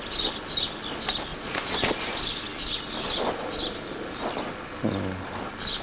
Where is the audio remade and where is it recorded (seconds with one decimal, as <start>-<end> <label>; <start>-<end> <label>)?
0.0-1.3 recorded; 1.3-2.0 remade; 2.0-5.8 recorded